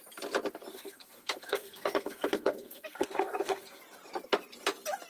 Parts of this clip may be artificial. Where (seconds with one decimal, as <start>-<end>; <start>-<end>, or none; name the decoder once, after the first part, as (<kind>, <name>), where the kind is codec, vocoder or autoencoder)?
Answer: 0.7-3.8 (codec, SNAC)